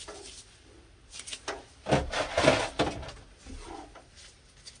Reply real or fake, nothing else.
real